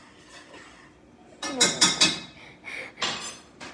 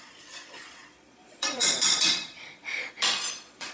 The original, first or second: first